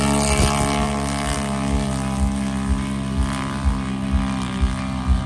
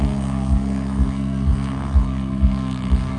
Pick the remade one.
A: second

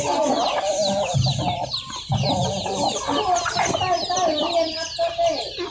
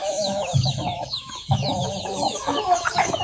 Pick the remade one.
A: second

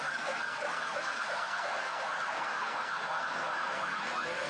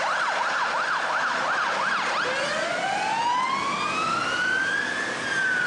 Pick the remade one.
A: first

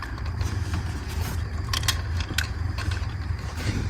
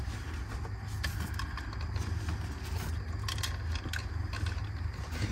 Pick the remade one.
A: first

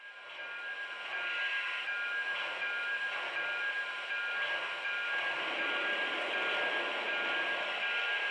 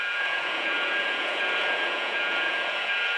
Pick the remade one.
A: second